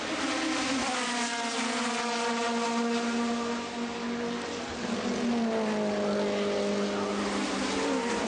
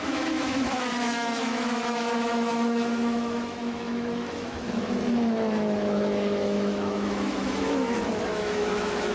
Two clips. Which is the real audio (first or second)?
first